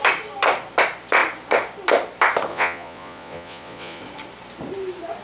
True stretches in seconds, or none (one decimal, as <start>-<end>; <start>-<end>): 0.0-2.5; 4.0-5.2